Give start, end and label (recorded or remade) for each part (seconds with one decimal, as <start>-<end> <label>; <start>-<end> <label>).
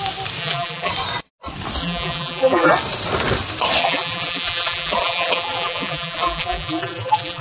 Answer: 0.0-0.4 recorded; 0.4-0.9 remade; 0.9-1.8 recorded; 1.8-2.7 remade; 2.7-3.8 recorded; 3.8-7.4 remade